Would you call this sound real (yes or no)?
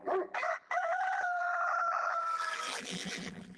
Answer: no